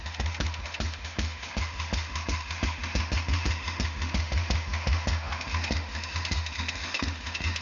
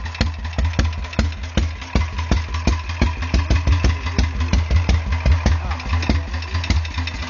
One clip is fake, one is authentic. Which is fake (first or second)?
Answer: first